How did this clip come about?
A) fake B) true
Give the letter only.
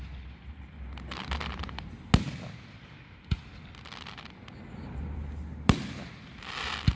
B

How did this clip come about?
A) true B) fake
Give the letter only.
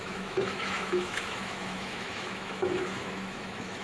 B